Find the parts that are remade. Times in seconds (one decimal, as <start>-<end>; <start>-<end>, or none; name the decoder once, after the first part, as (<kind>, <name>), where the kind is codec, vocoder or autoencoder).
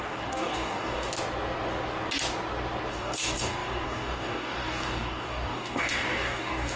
0.0-1.1 (codec, DAC); 2.9-6.8